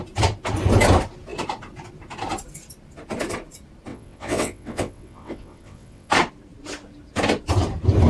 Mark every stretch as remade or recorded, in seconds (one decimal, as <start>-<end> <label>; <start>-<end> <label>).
0.0-3.9 recorded; 3.9-6.1 remade; 6.1-8.1 recorded